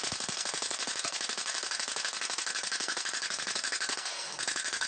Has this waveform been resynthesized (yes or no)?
yes